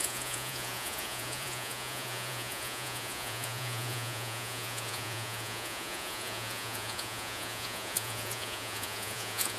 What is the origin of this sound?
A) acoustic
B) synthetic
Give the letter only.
B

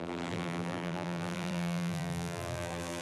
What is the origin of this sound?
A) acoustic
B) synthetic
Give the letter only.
B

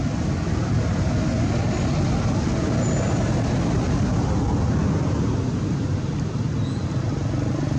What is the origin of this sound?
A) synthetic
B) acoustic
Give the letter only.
B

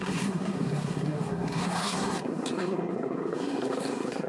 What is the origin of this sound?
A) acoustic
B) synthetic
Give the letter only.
B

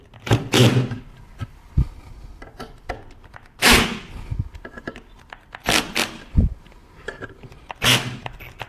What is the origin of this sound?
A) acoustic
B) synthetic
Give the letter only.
A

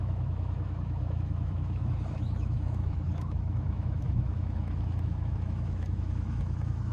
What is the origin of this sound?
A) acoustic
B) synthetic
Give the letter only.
B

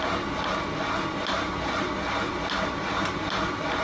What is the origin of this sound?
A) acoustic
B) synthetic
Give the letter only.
A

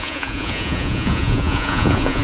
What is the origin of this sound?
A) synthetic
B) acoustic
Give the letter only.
A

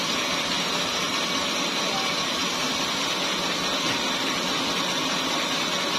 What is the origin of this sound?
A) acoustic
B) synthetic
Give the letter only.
A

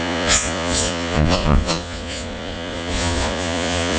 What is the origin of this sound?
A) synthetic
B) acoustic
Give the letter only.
A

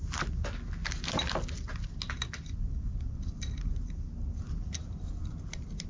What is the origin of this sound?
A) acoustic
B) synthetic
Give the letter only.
A